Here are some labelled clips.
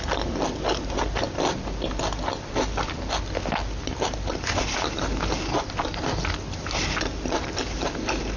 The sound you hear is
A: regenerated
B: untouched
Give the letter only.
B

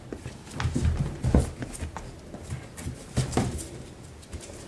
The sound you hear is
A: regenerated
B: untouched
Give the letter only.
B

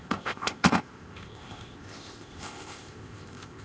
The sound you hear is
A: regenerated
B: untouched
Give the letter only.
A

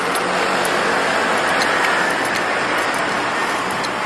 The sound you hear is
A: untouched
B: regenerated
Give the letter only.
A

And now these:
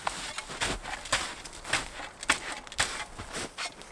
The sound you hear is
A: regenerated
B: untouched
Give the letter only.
B